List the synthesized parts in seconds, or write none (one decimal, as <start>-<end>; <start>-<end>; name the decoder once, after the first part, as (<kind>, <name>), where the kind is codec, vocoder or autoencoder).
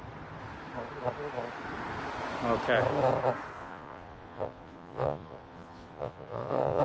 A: 3.6-6.8 (vocoder, Vocos)